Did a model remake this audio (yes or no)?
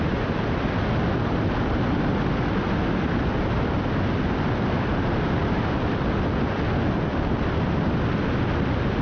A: no